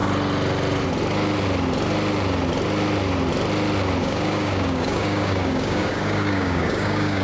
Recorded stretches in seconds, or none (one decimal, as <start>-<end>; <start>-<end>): 0.0-4.0